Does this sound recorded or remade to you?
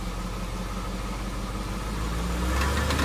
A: recorded